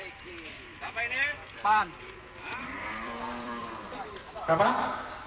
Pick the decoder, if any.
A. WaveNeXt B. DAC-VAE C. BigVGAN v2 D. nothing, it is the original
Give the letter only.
C